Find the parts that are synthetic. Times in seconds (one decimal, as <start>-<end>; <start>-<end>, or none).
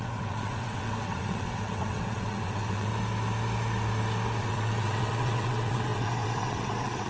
0.0-2.9; 4.4-7.1